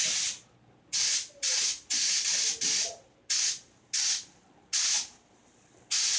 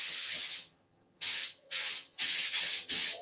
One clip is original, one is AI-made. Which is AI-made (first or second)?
second